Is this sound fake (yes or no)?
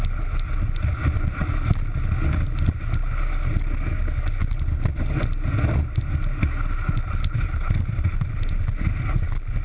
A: no